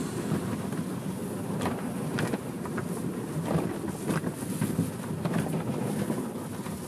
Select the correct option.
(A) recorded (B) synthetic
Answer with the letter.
A